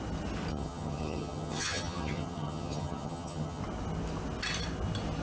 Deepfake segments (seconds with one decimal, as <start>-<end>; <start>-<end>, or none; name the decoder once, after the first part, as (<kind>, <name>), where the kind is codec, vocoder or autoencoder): 0.5-3.6 (vocoder, HiFi-GAN)